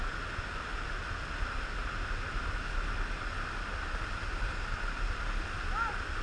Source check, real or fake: real